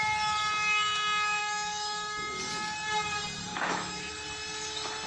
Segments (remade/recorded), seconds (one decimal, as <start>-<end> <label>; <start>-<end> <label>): 0.0-1.4 recorded; 1.4-2.4 remade; 2.4-3.5 recorded; 3.5-4.1 remade; 4.1-5.1 recorded